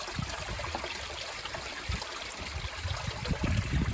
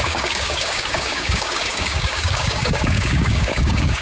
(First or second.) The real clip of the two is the first